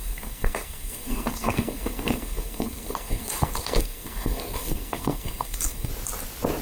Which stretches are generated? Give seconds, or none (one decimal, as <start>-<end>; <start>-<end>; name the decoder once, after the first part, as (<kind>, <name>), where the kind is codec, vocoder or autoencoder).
0.0-5.9 (codec, SNAC)